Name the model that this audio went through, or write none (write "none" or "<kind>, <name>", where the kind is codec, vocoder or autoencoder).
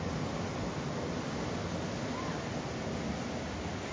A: none